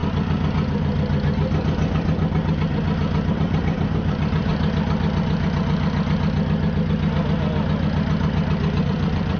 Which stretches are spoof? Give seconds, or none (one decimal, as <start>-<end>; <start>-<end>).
3.3-4.5; 8.8-9.4

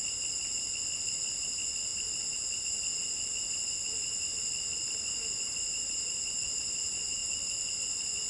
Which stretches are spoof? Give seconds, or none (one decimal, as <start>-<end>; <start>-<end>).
1.9-2.6; 7.2-7.7

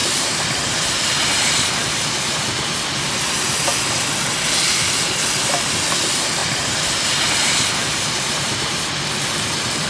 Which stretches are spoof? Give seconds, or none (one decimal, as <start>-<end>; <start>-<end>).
0.0-2.4; 6.4-8.9

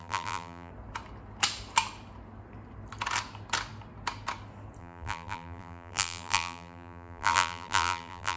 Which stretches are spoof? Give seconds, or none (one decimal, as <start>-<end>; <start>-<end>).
0.0-0.7; 4.8-8.4

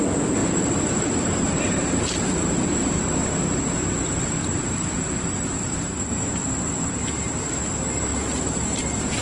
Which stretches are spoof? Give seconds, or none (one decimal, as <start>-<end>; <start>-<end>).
0.4-3.0; 4.4-6.2; 8.1-9.2

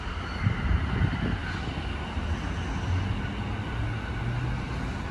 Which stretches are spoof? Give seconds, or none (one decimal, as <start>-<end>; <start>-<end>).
none

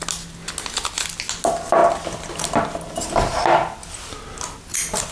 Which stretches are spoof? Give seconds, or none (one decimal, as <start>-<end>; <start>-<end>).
none